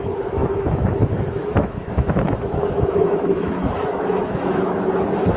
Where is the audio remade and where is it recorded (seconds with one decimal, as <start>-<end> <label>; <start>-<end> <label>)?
0.0-5.4 remade